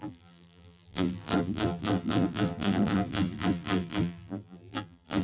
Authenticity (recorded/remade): remade